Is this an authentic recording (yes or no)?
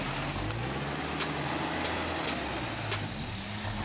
yes